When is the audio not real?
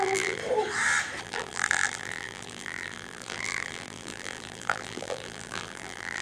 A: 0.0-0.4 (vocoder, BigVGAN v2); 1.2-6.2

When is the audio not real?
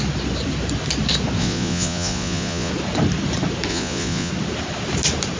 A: 1.4-2.7 (vocoder, Vocos); 3.7-4.3